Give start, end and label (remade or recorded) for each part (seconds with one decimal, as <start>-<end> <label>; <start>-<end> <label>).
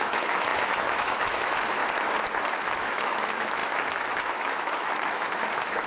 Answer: 0.0-1.8 remade; 1.8-2.5 recorded; 2.5-5.9 remade